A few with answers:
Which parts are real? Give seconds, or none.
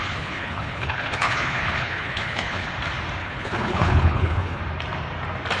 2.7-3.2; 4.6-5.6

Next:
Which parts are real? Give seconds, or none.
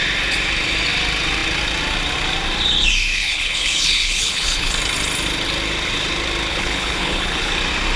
0.0-3.1; 4.8-6.5; 7.5-8.0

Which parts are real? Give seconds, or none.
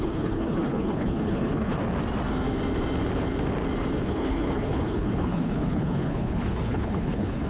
1.8-4.0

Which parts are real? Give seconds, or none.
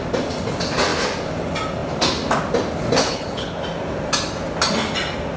0.0-3.0; 3.6-5.4